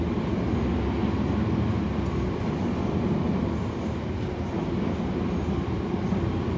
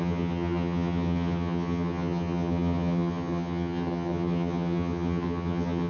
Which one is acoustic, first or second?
first